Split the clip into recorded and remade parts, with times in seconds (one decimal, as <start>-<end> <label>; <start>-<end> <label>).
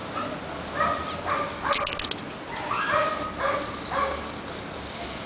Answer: 0.0-5.3 recorded